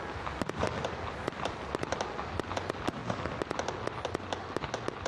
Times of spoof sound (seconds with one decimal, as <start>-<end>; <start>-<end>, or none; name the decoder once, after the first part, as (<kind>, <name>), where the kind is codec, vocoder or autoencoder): none